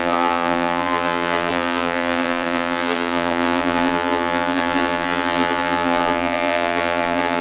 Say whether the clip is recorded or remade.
remade